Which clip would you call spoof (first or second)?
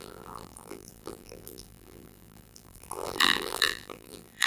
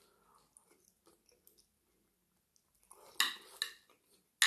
first